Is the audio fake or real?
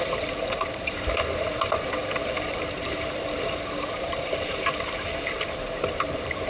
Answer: fake